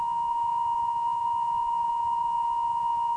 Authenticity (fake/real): fake